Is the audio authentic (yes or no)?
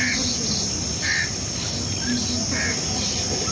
yes